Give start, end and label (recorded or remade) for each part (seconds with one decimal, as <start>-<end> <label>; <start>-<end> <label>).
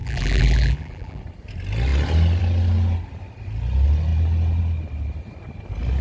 0.0-1.2 remade; 1.2-6.0 recorded